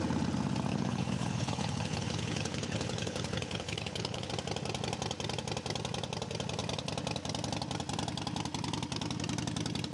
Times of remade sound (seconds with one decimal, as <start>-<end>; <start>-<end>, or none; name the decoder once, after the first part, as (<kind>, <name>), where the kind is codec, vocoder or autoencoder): 0.7-4.3 (codec, HILCodec)